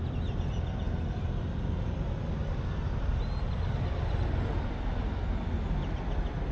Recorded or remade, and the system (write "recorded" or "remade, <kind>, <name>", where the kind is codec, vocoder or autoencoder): recorded